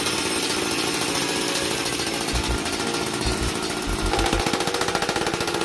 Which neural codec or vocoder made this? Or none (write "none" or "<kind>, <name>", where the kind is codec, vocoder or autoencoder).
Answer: none